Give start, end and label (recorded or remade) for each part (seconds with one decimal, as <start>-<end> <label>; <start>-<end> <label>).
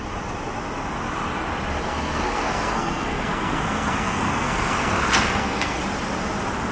0.0-1.8 recorded; 1.8-5.8 remade; 5.8-6.7 recorded